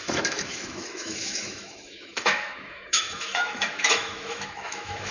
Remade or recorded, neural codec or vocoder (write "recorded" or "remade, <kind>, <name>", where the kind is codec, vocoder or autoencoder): remade, autoencoder, DAC-VAE